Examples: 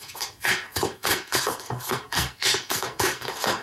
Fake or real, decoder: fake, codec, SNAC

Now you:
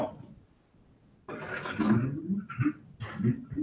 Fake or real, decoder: real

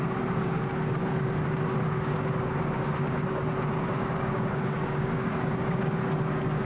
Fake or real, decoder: fake, codec, DAC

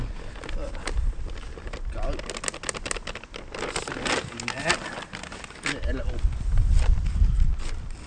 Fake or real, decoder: real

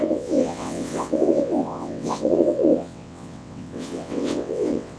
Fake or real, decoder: fake, vocoder, WaveNeXt